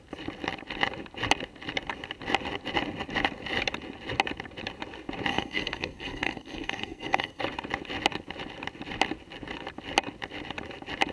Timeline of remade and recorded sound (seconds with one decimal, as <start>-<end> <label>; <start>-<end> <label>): 0.0-5.3 recorded; 5.3-7.4 remade; 7.4-11.1 recorded